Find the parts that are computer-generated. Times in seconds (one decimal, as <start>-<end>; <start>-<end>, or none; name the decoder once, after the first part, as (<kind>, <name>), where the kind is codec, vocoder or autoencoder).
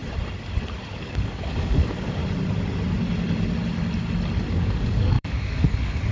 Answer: 0.9-2.2 (codec, DAC); 4.5-6.1